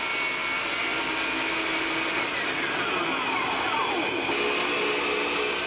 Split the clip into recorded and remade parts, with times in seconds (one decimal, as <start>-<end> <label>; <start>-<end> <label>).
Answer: 0.0-5.7 recorded